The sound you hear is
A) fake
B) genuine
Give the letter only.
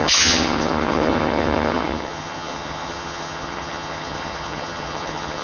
A